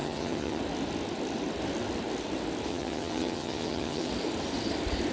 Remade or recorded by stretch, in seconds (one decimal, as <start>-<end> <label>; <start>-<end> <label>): 0.0-0.6 remade; 0.6-2.7 recorded; 2.7-4.1 remade; 4.1-5.1 recorded